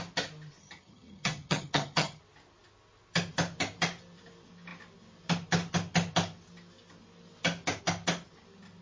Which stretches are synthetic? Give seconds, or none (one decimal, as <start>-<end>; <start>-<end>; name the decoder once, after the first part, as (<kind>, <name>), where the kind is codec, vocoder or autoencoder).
0.6-2.2 (vocoder, HiFi-GAN)